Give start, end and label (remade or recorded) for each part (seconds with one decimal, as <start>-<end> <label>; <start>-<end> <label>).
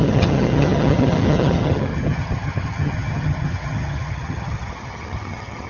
0.0-5.7 remade